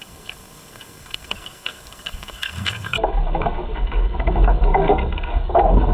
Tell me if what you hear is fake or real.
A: fake